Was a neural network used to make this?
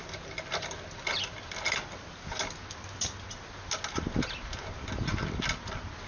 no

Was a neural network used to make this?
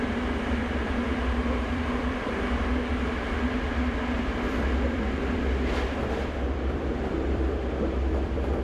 yes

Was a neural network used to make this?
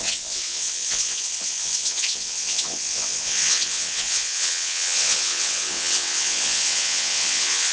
yes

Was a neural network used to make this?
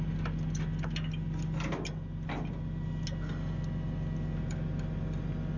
no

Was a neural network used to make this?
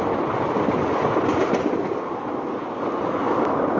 no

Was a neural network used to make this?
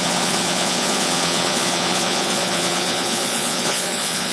yes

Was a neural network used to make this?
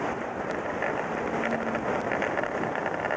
no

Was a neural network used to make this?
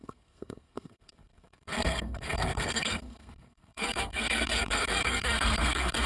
yes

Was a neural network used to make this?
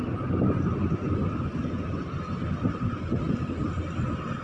no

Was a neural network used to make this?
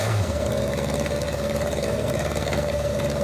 yes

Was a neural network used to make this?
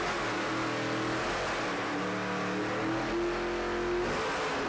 no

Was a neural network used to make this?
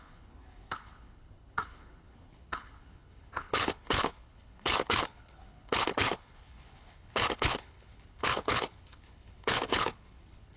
yes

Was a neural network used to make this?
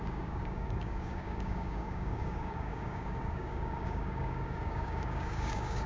yes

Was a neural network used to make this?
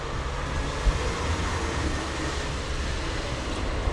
no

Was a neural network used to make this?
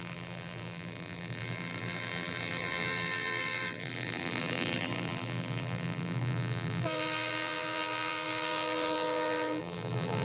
yes